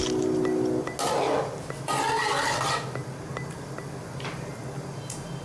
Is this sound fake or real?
real